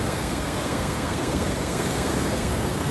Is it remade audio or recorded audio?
remade